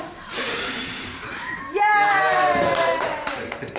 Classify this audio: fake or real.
fake